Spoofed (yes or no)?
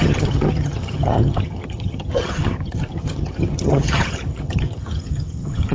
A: yes